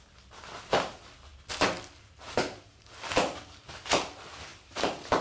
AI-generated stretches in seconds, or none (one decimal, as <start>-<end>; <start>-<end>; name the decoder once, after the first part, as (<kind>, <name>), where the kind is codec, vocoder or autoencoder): none